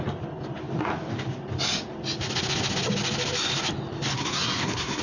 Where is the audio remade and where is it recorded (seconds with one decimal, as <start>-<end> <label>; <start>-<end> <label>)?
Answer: 0.0-4.1 recorded; 4.1-5.0 remade